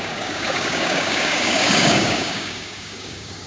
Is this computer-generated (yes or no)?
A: yes